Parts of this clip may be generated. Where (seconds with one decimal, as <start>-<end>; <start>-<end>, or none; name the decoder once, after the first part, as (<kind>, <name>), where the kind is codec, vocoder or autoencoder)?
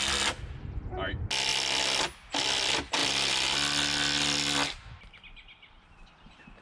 none